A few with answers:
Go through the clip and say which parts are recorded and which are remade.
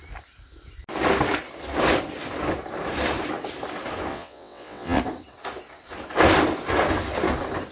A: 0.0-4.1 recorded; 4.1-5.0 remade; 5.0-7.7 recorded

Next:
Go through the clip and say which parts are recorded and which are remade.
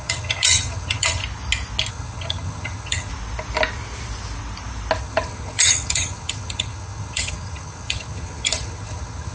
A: 0.0-1.2 remade; 1.2-1.9 recorded; 1.9-3.1 remade; 3.1-5.0 recorded; 5.0-9.3 remade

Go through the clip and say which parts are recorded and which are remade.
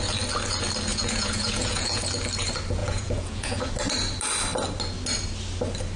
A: 0.0-0.9 recorded; 0.9-2.0 remade; 2.0-2.8 recorded; 2.8-3.7 remade; 3.7-6.0 recorded